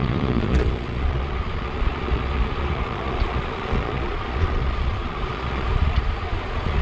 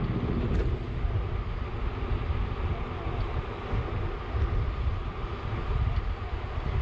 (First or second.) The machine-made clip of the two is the first